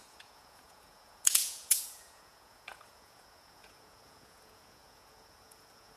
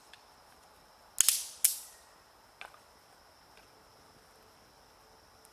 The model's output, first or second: first